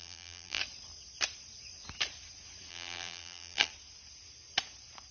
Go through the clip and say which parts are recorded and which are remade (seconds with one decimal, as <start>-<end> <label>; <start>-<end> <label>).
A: 0.0-0.6 remade; 0.6-2.7 recorded; 2.7-3.7 remade; 3.7-5.1 recorded